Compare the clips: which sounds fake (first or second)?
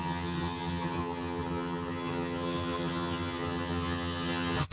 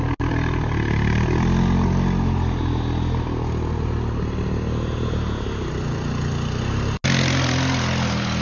first